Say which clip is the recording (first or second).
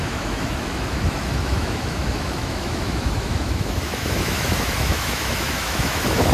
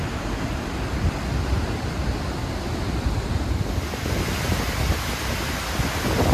second